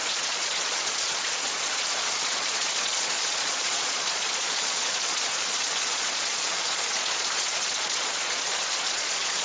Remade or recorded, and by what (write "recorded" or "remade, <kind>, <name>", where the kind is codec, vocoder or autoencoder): remade, vocoder, Vocos